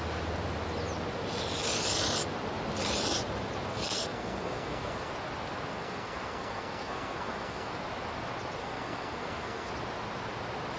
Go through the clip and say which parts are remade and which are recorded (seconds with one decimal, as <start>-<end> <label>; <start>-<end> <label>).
0.0-3.7 recorded; 3.7-5.1 remade; 5.1-5.7 recorded; 5.7-7.8 remade; 7.8-8.6 recorded; 8.6-9.7 remade; 9.7-10.8 recorded